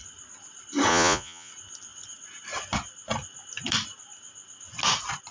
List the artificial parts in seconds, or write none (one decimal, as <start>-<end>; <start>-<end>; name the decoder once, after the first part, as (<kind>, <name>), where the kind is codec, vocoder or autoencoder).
0.9-1.5 (vocoder, Vocos)